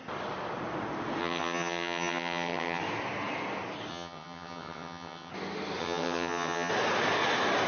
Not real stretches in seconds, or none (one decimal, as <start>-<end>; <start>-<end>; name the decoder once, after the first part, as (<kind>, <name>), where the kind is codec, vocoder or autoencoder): 1.2-2.8 (vocoder, HiFi-GAN); 3.9-5.3; 5.8-6.7